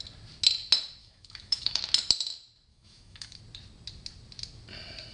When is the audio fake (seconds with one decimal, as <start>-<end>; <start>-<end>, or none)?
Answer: 1.0-1.8; 2.7-3.4